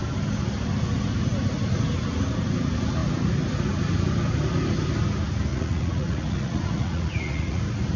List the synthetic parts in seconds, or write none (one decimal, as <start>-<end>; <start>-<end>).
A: 5.5-7.6